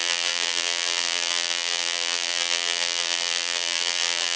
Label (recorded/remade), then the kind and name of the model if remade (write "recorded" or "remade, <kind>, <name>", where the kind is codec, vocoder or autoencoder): remade, vocoder, BigVGAN v2